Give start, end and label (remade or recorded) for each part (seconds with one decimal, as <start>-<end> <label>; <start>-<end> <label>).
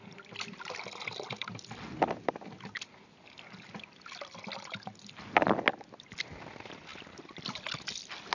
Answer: 0.0-8.3 recorded